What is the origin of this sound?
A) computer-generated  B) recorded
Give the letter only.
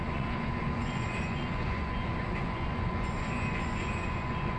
A